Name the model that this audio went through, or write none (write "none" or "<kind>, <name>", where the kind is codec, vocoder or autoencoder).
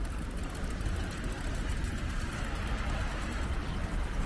none